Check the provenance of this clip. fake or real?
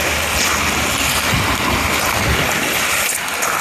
real